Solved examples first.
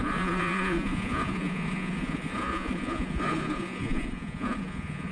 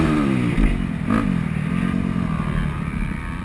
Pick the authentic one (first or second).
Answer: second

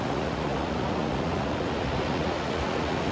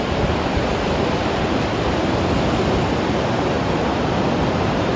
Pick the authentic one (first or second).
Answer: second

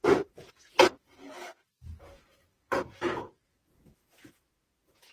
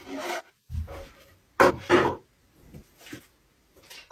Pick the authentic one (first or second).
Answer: second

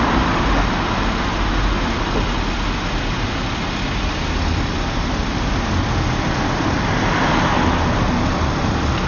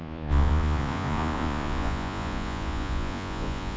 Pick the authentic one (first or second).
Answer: first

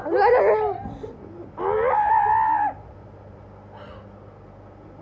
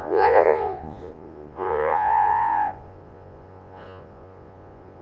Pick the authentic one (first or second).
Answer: first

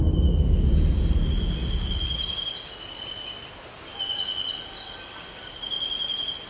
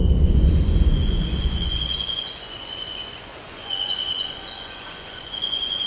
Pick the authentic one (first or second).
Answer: first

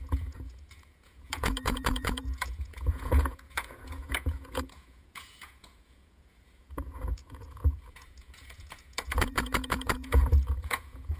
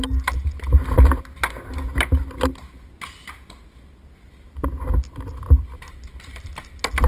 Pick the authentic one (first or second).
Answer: second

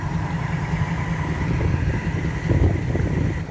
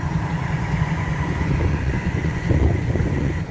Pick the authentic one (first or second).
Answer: first